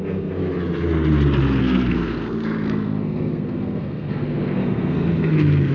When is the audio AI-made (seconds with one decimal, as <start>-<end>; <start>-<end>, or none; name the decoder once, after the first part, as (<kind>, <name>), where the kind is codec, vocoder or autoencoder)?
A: 0.0-0.4 (codec, SNAC); 1.6-5.7